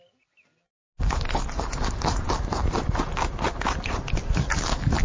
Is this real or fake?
real